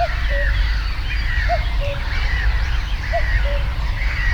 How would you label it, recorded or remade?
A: remade